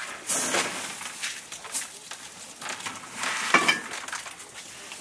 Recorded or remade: recorded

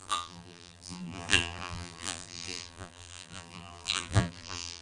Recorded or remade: remade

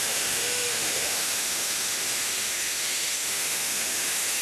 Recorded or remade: remade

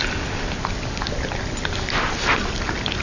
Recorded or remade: recorded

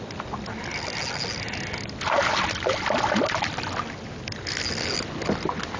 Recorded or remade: recorded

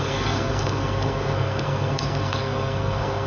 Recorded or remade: remade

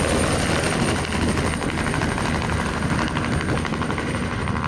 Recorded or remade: recorded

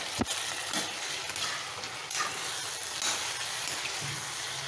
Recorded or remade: recorded